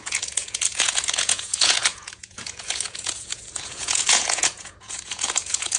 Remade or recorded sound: remade